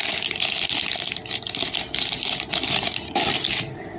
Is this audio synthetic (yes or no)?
no